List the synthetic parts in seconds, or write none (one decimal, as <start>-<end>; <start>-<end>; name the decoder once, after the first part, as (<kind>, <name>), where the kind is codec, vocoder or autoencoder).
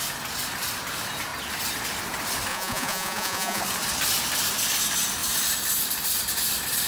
2.5-3.6 (vocoder, Vocos)